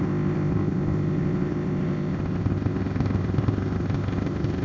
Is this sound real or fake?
fake